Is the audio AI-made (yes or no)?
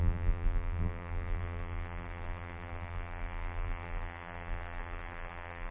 yes